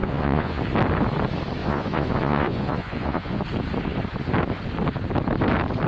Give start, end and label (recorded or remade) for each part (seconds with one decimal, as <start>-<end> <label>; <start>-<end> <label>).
0.0-0.6 remade; 0.6-1.6 recorded; 1.6-3.4 remade; 3.4-5.9 recorded